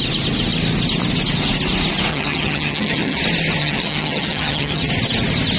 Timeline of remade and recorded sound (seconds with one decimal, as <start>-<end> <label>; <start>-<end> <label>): 0.0-2.1 recorded; 2.1-3.2 remade; 3.2-3.6 recorded; 3.6-4.9 remade; 4.9-5.6 recorded

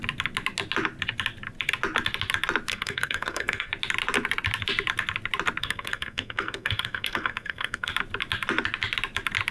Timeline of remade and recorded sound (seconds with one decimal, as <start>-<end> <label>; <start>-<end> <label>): 0.0-2.7 recorded; 2.7-3.7 remade; 3.7-5.6 recorded; 5.6-7.9 remade; 7.9-9.5 recorded

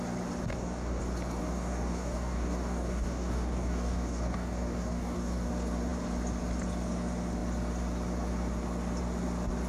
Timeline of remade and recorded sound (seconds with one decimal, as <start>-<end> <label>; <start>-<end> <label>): 0.0-0.5 recorded; 0.5-1.0 remade; 1.0-1.4 recorded; 1.4-5.5 remade; 5.5-9.7 recorded

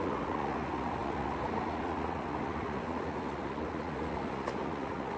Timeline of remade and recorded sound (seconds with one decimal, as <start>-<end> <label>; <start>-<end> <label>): 0.0-5.2 remade

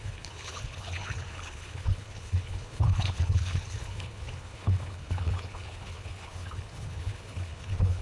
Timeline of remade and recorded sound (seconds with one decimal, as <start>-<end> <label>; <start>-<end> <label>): 0.0-8.0 remade